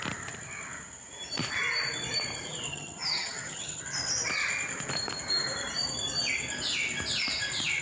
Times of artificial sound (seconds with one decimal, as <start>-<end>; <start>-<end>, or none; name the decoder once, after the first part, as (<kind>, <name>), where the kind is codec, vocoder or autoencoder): 2.7-3.8 (vocoder, HiFi-GAN)